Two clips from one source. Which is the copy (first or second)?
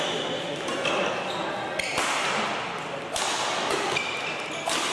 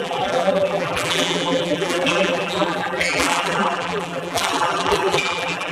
second